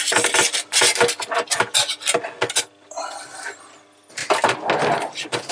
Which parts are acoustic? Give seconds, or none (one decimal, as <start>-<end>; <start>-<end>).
0.0-5.5